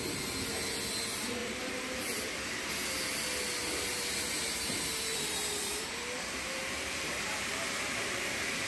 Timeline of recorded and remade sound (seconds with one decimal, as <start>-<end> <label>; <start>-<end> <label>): 0.0-1.4 recorded; 1.4-2.5 remade; 2.5-3.6 recorded; 3.6-8.7 remade